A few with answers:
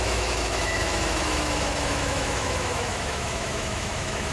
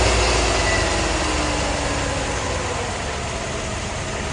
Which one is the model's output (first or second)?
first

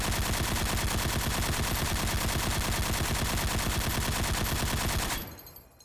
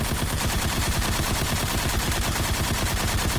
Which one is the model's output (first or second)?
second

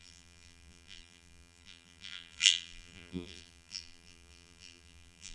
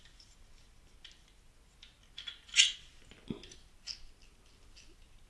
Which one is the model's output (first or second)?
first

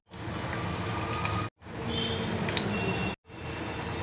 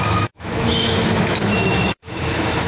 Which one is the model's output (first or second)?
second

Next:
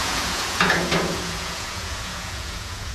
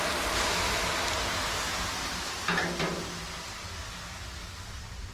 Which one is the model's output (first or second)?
first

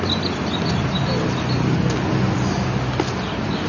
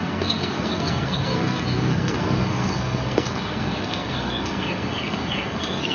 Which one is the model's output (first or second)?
second